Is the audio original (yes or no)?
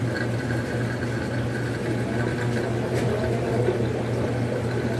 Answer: yes